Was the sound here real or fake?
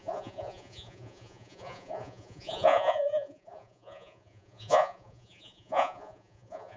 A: fake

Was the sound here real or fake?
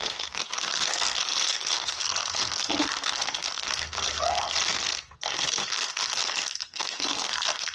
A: fake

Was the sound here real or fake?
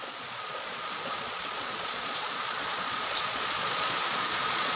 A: fake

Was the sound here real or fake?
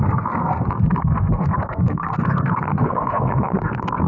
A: fake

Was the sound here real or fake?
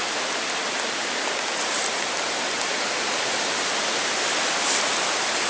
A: real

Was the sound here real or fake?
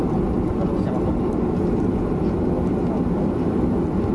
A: real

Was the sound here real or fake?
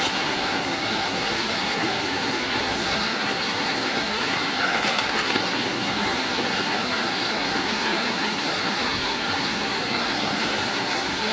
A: fake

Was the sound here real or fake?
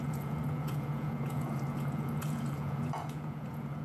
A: fake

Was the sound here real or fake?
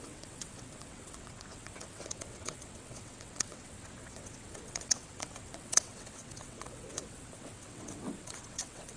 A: fake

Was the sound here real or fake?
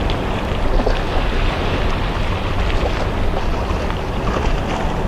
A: real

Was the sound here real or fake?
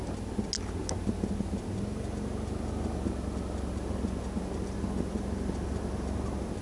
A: real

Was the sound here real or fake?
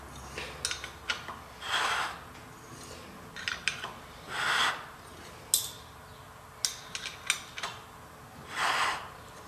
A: real